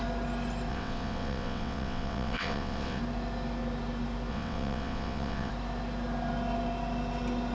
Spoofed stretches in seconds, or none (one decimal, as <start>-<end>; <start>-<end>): 0.7-3.0; 4.3-5.5

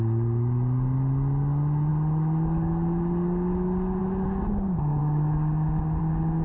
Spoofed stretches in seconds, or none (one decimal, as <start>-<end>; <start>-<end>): none

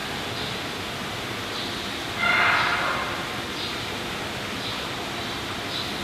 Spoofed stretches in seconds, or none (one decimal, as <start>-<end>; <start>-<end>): none